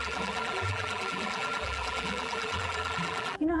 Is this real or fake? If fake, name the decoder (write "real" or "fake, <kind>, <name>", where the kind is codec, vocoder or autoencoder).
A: fake, vocoder, BigVGAN v2